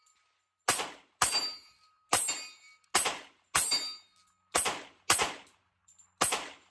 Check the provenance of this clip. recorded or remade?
recorded